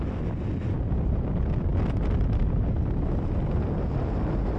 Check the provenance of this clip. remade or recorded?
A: recorded